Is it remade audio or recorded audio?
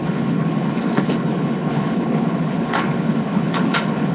remade